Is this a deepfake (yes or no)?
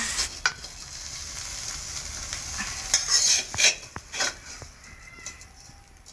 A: no